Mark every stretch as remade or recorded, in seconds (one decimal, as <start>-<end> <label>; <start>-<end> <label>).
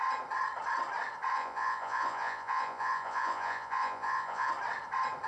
0.0-1.3 recorded; 1.3-4.5 remade; 4.5-5.3 recorded